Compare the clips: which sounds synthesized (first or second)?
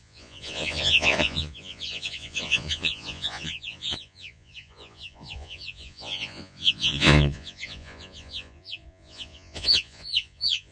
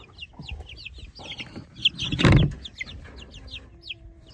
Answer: first